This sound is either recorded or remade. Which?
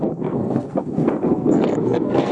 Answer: remade